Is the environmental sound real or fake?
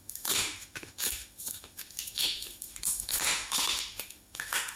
fake